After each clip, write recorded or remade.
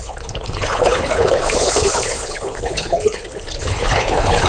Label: remade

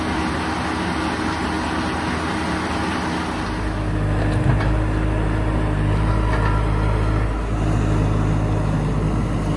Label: recorded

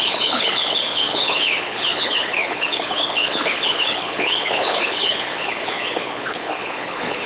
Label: remade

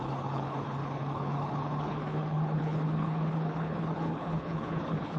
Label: remade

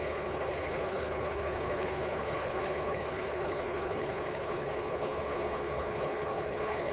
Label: remade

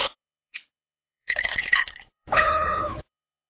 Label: remade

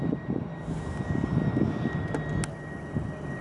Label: recorded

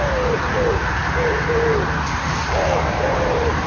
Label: recorded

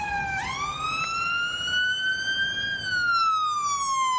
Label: recorded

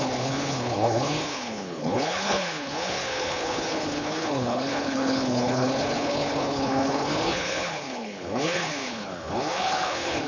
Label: remade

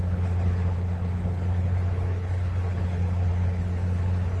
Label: remade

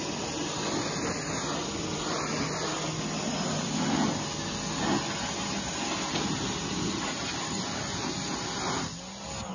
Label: recorded